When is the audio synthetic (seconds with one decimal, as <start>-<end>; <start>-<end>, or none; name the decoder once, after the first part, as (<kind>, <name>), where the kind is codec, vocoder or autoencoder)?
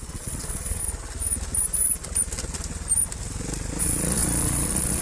0.0-0.8 (vocoder, Vocos); 3.8-5.0